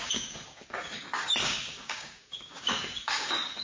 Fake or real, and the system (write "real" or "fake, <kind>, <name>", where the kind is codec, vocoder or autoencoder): fake, codec, DAC